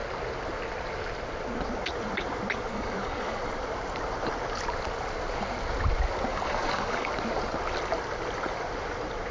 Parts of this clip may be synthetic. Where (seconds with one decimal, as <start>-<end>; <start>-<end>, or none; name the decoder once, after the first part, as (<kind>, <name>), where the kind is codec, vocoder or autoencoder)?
2.7-3.4 (codec, DAC); 6.3-7.1